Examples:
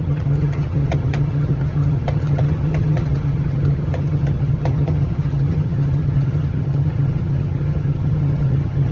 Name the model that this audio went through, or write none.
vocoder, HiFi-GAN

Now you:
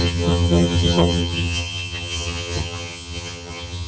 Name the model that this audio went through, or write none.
vocoder, HiFi-GAN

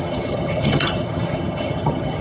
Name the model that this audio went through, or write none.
vocoder, HiFi-GAN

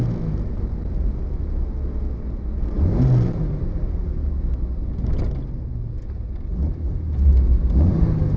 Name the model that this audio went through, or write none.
none